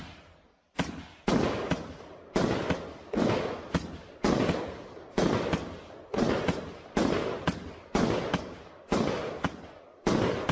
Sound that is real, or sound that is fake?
real